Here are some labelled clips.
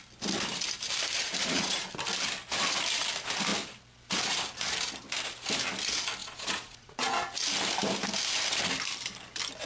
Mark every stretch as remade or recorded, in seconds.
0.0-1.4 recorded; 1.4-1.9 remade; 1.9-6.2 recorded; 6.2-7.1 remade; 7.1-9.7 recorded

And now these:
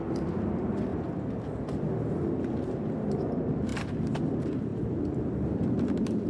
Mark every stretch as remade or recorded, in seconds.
0.0-0.9 remade; 0.9-3.3 recorded; 3.3-6.3 remade